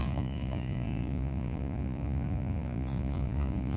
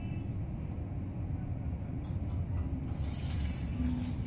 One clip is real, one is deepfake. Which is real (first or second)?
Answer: second